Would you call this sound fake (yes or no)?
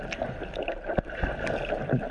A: no